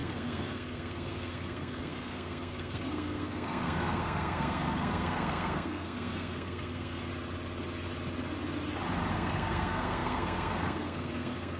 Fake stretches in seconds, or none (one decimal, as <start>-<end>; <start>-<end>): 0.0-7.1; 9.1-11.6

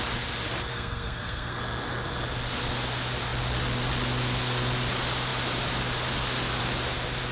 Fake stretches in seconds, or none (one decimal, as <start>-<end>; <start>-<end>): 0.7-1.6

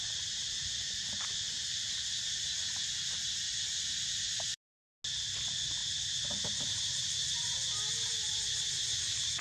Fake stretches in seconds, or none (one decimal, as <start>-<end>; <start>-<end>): none

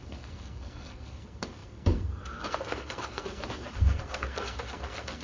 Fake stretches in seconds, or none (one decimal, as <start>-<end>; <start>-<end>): 0.0-5.2

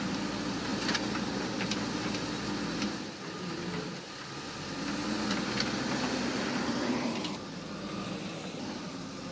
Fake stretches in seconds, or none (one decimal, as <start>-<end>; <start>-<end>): none